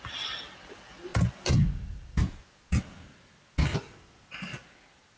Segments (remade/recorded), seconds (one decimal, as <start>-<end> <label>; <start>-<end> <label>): 0.0-5.2 recorded